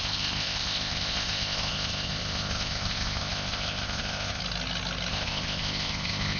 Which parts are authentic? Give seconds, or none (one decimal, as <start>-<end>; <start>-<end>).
4.4-5.1